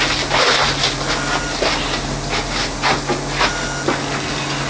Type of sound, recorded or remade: recorded